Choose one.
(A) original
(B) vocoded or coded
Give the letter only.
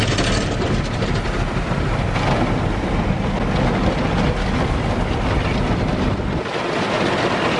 A